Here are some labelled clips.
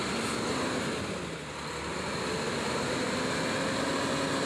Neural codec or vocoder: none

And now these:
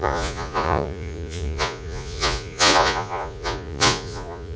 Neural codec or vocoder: vocoder, Vocos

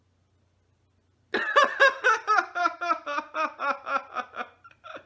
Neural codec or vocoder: none